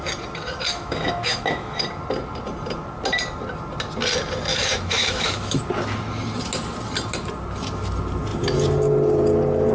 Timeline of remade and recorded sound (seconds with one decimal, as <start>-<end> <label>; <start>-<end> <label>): 0.0-0.7 recorded; 0.7-1.9 remade; 1.9-4.5 recorded; 4.5-5.6 remade; 5.6-9.7 recorded